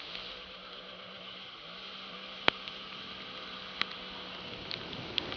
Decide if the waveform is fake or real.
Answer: real